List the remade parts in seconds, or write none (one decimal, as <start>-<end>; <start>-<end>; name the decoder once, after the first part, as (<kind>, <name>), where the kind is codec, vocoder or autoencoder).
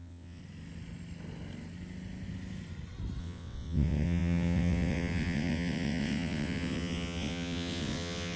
0.0-0.4 (vocoder, WaveNeXt); 3.2-8.4